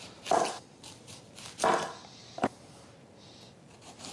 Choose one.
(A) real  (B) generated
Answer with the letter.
A